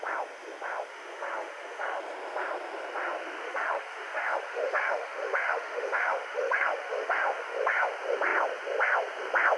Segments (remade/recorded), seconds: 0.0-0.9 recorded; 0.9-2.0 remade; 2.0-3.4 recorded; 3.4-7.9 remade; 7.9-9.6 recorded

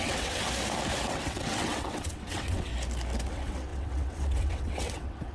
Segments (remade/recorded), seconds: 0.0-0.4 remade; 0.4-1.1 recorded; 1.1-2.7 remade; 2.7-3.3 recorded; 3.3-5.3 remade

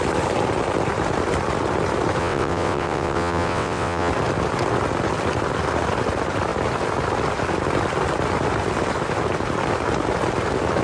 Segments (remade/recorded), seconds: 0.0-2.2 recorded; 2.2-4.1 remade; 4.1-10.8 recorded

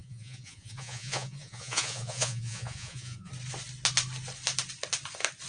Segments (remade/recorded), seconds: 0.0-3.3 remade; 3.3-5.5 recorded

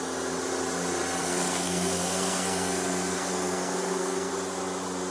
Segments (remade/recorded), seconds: 0.0-1.2 recorded; 1.2-4.3 remade; 4.3-5.1 recorded

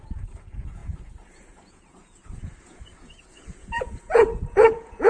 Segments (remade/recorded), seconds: 0.0-5.1 remade